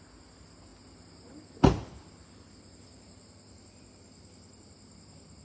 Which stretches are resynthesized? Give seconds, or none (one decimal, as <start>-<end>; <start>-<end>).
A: none